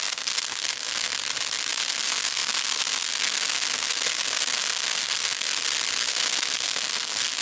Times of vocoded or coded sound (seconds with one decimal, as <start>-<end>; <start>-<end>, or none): 0.0-1.1; 1.7-5.6; 6.1-7.4